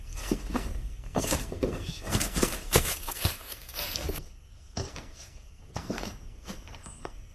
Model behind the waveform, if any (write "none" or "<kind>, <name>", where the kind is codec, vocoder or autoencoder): codec, SNAC